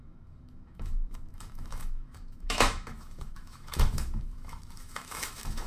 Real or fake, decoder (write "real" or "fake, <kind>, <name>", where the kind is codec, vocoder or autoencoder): fake, autoencoder, DAC-VAE